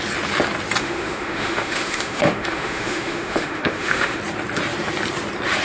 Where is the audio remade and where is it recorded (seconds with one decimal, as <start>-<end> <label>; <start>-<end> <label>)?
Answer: 0.0-0.8 recorded; 0.8-4.2 remade; 4.2-5.6 recorded